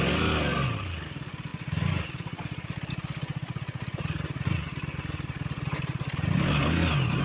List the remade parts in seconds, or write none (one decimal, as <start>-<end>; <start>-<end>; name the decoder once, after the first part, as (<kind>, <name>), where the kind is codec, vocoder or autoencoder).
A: none